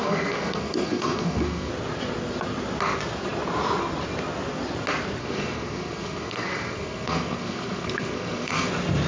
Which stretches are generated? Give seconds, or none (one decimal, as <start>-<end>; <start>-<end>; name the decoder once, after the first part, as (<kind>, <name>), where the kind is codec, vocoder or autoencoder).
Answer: 0.0-1.7 (codec, SNAC); 5.2-8.7